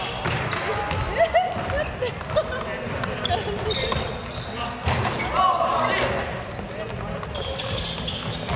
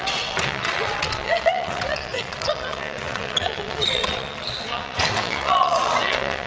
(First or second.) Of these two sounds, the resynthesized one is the second